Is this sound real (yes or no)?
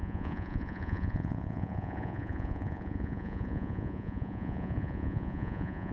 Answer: no